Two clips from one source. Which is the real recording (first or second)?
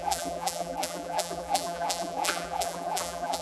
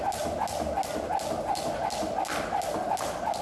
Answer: second